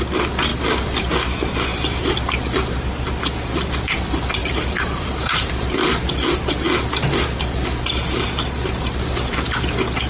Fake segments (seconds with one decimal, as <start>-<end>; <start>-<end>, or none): 4.4-5.5